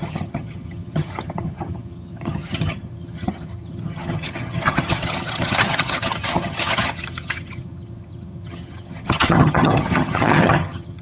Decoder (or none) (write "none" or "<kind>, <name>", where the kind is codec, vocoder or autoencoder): vocoder, HiFi-GAN